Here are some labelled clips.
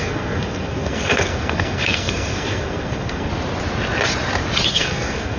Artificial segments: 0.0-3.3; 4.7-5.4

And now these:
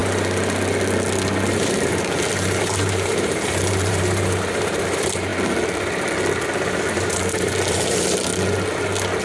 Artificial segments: 1.5-5.3; 6.9-8.3

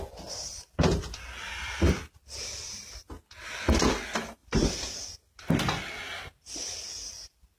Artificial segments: 4.4-4.9

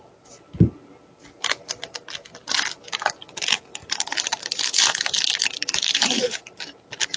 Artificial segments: 3.8-6.8

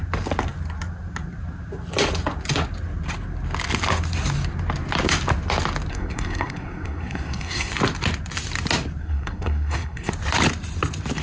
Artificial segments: 5.9-7.7; 9.0-10.1

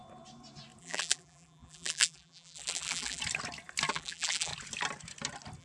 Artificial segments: 0.8-3.2; 3.9-4.5